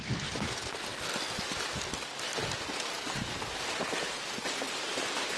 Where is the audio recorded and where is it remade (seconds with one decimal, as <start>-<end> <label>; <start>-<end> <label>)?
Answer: 0.0-5.4 recorded